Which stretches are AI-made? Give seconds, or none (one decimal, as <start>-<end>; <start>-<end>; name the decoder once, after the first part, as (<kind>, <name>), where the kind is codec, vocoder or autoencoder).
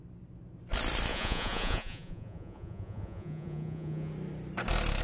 1.1-4.1 (vocoder, Vocos)